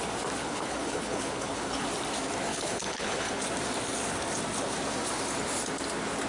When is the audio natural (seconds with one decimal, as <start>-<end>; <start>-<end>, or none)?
0.0-0.4; 1.9-2.5; 3.4-6.3